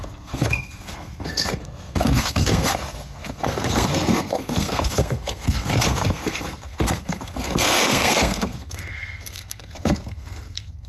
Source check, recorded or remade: remade